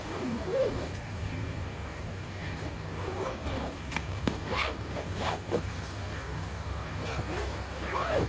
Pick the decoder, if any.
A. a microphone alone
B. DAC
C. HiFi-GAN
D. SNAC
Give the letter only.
B